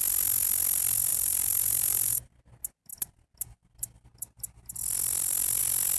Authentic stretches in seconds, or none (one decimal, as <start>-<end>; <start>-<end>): 0.0-1.1; 2.2-6.0